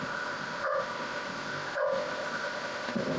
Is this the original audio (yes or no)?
no